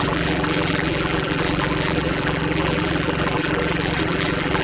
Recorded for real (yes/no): no